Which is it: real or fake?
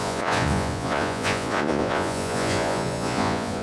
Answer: fake